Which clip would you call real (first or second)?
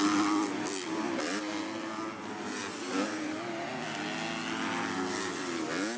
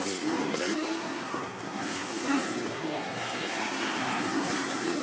first